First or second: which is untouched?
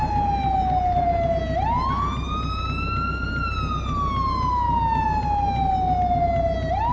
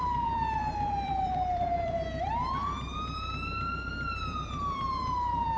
first